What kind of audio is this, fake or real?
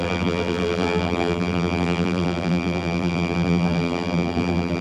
fake